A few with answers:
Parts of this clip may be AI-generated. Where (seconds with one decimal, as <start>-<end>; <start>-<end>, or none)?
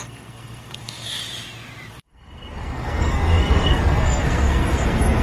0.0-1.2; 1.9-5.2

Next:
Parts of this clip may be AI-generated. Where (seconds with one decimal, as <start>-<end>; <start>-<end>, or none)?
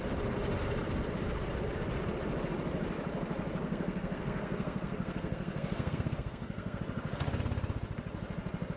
3.6-6.8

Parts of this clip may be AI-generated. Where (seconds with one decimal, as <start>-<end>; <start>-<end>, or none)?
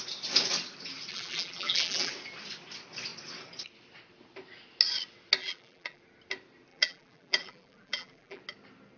1.1-2.1; 5.4-6.0; 6.7-8.4